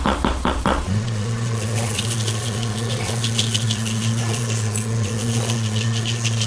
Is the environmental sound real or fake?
fake